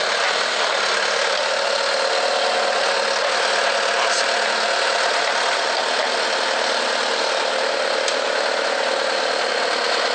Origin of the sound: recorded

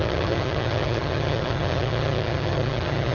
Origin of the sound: remade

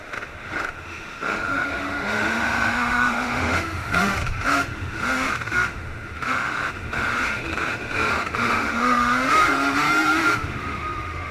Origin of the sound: remade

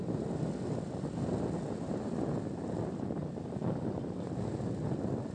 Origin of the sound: recorded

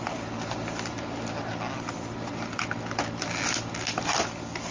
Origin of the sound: recorded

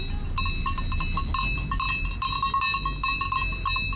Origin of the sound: recorded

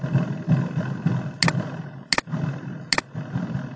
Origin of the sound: recorded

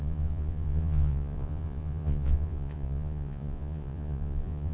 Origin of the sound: remade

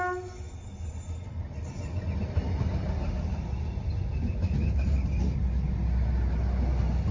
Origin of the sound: recorded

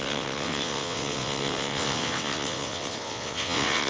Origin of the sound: remade